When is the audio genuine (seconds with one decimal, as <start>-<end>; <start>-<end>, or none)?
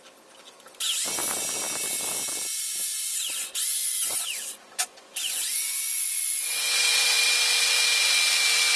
0.0-2.9; 7.3-8.8